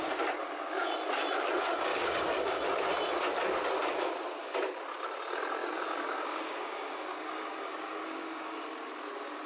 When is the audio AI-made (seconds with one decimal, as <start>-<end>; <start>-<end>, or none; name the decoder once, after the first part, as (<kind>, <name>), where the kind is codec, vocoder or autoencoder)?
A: 0.4-0.9 (codec, DAC); 1.9-2.6; 5.6-8.6